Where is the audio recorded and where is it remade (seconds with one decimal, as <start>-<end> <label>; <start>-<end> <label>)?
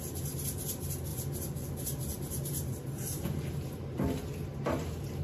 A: 0.0-1.1 recorded; 1.1-4.2 remade; 4.2-5.2 recorded